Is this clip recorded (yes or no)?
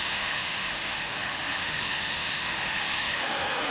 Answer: no